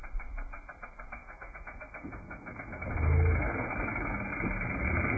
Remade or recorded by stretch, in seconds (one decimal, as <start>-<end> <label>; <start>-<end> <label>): 0.0-1.2 recorded; 1.2-4.3 remade; 4.3-5.2 recorded

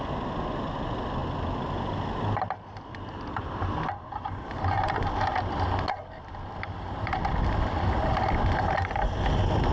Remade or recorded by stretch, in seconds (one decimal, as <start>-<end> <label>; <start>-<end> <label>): 0.0-9.7 recorded